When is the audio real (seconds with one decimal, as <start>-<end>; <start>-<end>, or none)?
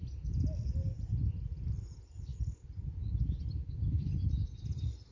0.0-5.1